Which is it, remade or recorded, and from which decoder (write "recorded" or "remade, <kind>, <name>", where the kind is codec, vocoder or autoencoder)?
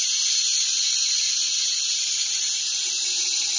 recorded